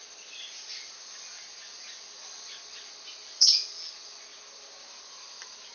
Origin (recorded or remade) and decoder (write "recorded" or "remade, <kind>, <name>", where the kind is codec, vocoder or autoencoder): recorded